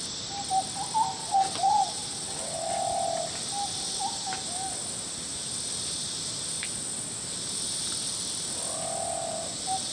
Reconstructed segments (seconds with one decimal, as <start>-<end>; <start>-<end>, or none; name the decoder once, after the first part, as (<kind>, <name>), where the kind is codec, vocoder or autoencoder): 1.2-2.7 (vocoder, WaveNeXt)